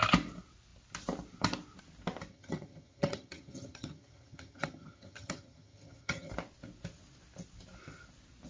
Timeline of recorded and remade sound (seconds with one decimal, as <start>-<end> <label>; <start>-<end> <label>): 0.0-2.3 recorded; 2.3-6.3 remade; 6.3-8.5 recorded